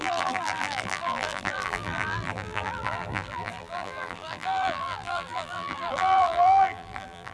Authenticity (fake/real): fake